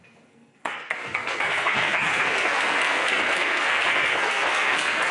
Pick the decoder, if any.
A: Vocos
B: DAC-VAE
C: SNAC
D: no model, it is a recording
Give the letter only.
C